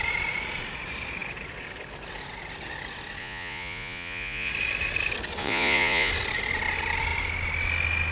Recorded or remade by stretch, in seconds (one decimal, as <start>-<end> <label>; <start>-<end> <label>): 0.0-3.2 recorded; 3.2-4.5 remade; 4.5-5.4 recorded; 5.4-6.1 remade; 6.1-8.1 recorded